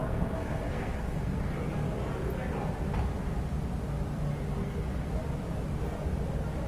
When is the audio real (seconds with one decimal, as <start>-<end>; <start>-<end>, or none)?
1.6-4.6; 5.1-6.7